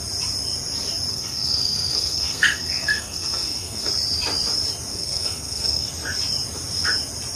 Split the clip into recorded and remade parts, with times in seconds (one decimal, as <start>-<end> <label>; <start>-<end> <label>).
0.0-1.1 recorded; 1.1-3.9 remade; 3.9-4.9 recorded; 4.9-5.9 remade; 5.9-7.3 recorded

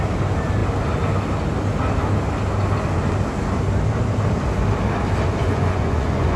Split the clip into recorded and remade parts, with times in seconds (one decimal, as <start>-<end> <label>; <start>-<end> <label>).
0.0-5.4 recorded; 5.4-6.4 remade